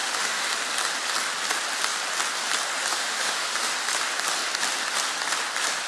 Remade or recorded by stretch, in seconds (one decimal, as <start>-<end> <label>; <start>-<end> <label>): 0.0-0.5 remade; 0.5-2.9 recorded; 2.9-3.9 remade; 3.9-5.9 recorded